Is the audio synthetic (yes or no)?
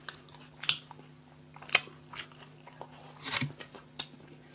no